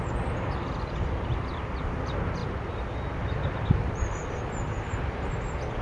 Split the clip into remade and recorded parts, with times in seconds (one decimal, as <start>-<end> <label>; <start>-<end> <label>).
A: 0.0-2.4 remade; 2.4-3.1 recorded; 3.1-5.8 remade